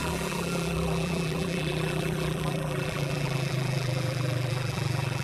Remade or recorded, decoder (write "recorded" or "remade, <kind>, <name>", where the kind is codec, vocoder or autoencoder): remade, vocoder, BigVGAN v2